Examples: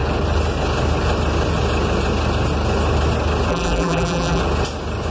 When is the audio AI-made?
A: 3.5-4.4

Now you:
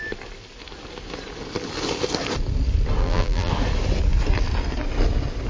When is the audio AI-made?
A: 3.0-3.5